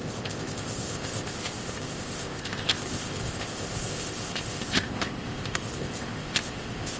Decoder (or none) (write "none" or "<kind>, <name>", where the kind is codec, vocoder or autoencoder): codec, ZipCodec